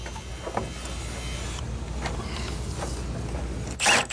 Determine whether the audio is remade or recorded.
recorded